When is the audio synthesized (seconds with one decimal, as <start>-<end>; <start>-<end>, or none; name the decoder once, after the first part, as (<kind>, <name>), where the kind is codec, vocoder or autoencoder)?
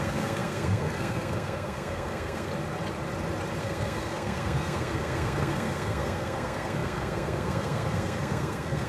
0.0-2.5 (codec, SNAC); 3.6-8.9